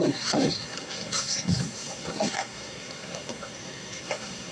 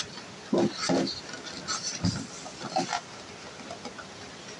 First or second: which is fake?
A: first